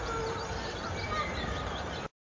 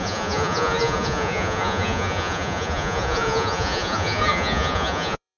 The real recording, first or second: first